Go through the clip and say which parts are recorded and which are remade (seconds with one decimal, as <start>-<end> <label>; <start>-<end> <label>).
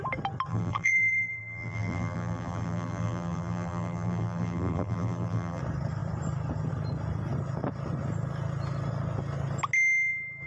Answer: 0.0-0.5 recorded; 0.5-5.6 remade; 5.6-10.5 recorded